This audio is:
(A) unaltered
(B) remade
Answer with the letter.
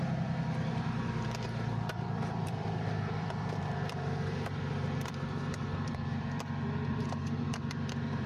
B